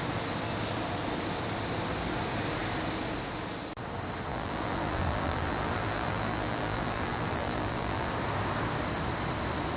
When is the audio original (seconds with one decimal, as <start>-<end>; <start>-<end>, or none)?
0.0-4.3; 8.1-9.8